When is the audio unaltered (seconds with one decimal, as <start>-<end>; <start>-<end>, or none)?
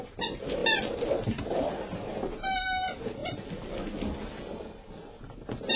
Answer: 0.0-0.6; 1.7-3.2; 5.2-5.8